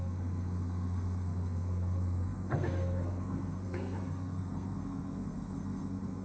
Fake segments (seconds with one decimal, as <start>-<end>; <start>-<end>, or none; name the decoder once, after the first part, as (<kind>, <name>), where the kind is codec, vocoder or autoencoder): 0.0-6.2 (codec, SNAC)